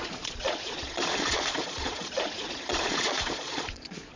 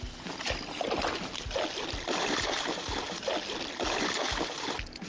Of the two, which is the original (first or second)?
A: second